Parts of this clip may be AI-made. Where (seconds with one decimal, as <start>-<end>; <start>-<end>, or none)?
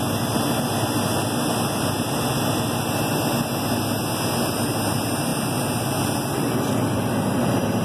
none